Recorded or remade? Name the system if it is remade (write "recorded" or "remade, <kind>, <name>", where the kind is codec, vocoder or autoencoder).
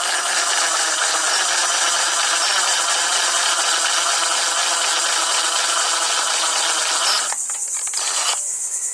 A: recorded